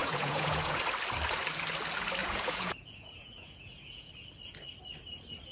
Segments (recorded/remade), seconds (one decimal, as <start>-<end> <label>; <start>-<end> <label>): 0.0-0.8 remade; 0.8-2.2 recorded; 2.2-4.1 remade; 4.1-5.5 recorded